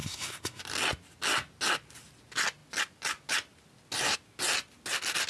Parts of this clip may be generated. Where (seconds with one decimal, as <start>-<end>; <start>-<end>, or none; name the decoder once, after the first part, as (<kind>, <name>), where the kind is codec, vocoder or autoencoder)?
0.0-0.6 (codec, SNAC)